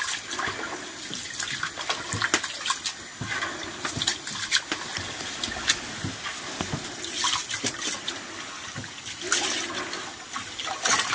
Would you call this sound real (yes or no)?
yes